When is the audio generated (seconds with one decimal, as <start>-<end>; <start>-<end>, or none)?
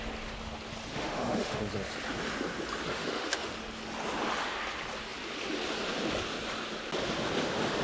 0.9-1.6; 2.9-3.5